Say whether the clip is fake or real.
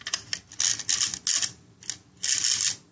real